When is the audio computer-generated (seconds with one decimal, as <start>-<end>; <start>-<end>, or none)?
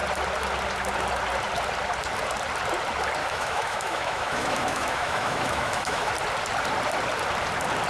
3.2-6.1